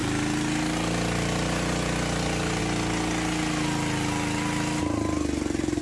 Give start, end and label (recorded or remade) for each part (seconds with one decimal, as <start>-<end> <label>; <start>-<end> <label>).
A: 0.0-5.8 recorded